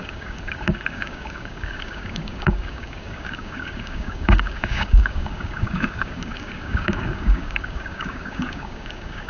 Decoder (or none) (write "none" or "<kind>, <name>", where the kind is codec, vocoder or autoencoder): codec, DAC